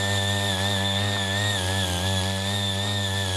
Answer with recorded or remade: recorded